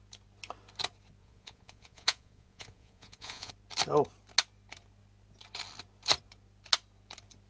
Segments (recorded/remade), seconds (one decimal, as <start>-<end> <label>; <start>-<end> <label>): 0.0-1.2 recorded; 1.2-3.5 remade; 3.5-7.5 recorded